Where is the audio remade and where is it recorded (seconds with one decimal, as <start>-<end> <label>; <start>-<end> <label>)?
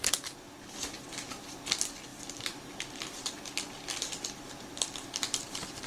0.0-2.1 recorded; 2.1-5.9 remade